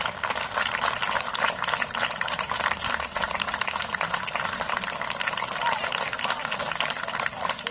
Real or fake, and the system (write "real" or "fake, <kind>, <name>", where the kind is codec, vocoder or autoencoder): real